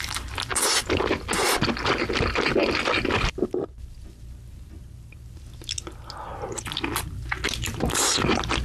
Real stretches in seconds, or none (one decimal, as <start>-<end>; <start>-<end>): 0.0-6.3; 7.1-8.6